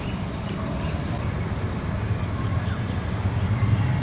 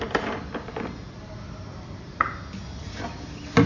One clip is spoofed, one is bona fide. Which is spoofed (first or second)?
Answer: first